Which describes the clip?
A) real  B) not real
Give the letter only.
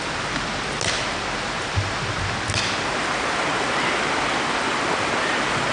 A